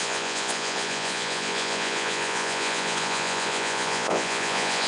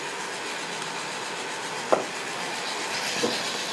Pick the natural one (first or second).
second